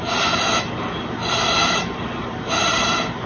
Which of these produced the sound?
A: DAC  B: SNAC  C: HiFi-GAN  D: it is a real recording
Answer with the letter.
D